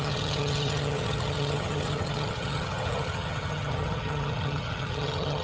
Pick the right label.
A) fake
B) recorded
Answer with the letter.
A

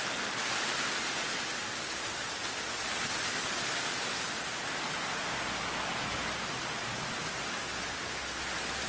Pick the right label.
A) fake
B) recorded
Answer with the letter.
B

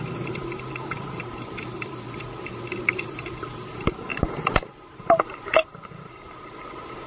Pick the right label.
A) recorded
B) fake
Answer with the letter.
A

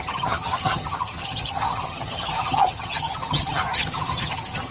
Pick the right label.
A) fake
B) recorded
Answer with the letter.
A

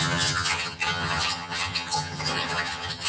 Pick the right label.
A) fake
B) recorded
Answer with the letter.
A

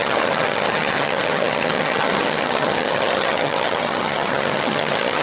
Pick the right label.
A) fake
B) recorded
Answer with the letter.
A